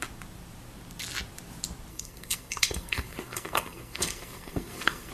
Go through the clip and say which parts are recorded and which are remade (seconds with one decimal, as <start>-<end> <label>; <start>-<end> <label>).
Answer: 0.0-1.9 recorded; 1.9-5.1 remade